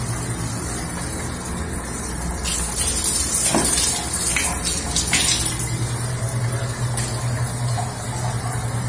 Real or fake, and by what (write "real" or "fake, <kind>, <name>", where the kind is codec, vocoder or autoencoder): real